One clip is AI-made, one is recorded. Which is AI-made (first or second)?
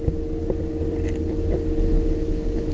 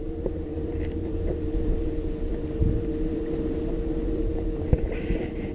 second